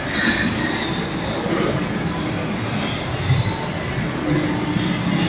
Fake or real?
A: real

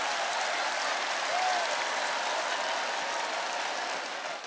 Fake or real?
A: real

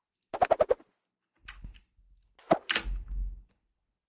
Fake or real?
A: real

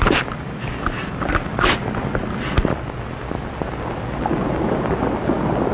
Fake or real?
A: real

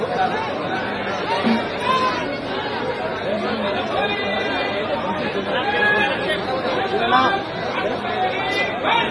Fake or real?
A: real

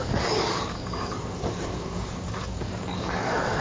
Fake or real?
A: fake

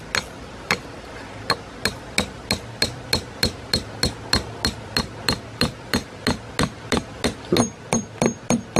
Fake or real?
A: real